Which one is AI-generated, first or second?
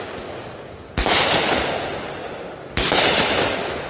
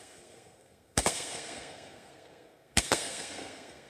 second